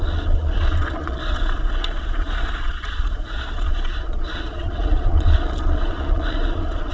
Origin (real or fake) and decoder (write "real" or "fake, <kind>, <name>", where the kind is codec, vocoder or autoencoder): fake, vocoder, Vocos